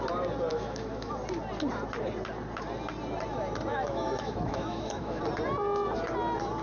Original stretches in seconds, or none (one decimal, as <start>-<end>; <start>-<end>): 0.0-0.5; 1.1-3.7; 5.2-6.6